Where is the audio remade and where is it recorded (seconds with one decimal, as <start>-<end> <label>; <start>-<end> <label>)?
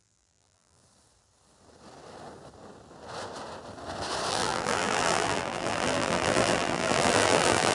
0.0-0.8 remade; 0.8-4.3 recorded; 4.3-7.7 remade